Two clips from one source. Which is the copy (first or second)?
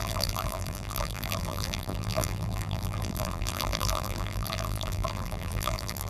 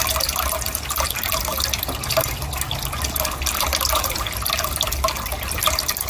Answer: first